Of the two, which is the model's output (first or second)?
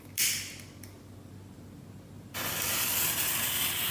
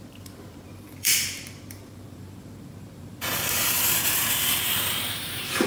second